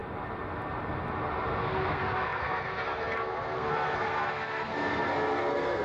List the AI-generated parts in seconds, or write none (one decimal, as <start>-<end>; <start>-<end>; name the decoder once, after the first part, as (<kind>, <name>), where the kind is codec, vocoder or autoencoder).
1.6-5.8 (codec, SNAC)

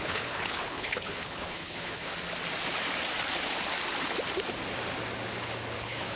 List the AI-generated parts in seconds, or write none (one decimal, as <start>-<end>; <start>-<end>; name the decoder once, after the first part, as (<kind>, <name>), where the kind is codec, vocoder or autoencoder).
0.0-2.1 (codec, HILCodec); 5.8-6.2

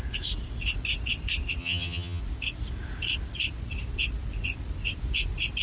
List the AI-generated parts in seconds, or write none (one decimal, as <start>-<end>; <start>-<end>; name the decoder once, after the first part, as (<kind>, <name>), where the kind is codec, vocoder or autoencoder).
1.6-2.2 (vocoder, HiFi-GAN)

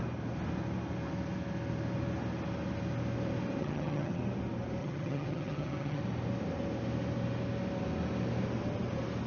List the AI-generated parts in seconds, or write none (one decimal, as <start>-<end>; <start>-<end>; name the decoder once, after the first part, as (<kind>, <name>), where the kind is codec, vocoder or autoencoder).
3.6-4.2 (vocoder, HiFi-GAN); 4.8-6.0

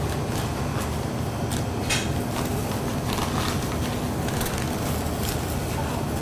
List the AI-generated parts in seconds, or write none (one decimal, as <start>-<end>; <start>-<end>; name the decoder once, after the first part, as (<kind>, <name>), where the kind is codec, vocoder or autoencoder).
none